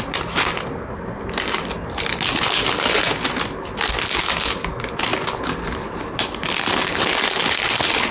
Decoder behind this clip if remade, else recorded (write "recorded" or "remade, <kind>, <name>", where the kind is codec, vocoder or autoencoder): recorded